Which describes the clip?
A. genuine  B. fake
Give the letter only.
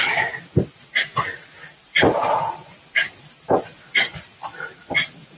B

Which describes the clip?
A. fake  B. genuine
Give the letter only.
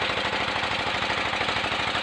B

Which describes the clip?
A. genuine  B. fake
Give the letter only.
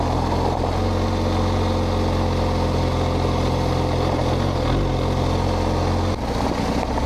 A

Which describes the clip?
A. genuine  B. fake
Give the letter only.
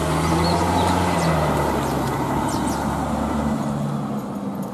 A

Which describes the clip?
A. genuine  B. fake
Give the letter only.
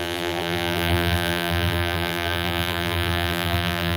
B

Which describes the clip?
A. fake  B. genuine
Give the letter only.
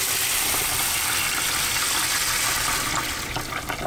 B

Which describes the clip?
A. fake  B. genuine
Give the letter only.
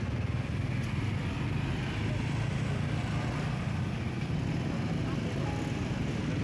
B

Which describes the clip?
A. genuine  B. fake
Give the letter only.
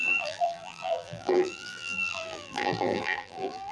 B